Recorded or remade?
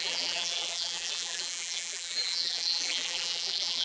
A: remade